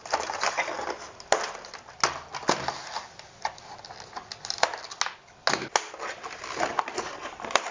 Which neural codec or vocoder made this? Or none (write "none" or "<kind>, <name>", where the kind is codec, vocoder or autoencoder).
none